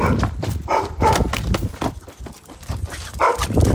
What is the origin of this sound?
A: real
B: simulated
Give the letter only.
B